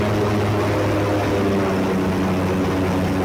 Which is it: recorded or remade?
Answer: recorded